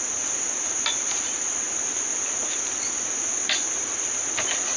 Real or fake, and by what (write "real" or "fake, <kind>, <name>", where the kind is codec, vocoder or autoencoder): real